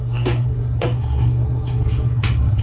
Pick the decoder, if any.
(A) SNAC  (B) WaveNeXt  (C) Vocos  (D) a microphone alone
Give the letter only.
A